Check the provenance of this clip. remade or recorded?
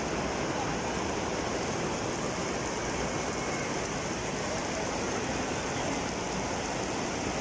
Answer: recorded